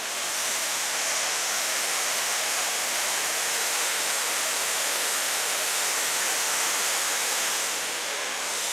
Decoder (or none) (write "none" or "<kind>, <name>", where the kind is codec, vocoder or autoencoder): autoencoder, DAC-VAE